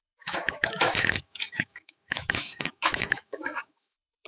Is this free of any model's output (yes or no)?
no